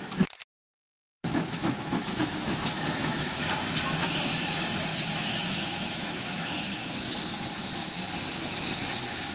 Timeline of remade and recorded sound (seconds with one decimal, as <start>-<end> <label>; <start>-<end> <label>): 0.0-0.7 recorded; 0.7-3.4 remade; 3.4-4.9 recorded; 4.9-7.2 remade; 7.2-9.3 recorded